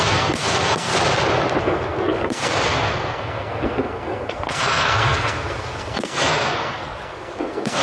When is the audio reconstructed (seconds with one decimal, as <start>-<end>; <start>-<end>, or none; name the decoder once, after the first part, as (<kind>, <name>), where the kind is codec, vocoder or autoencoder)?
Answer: 0.0-0.9 (codec, SNAC); 1.6-7.8